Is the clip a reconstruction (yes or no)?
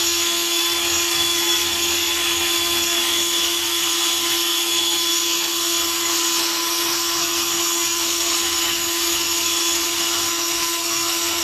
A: yes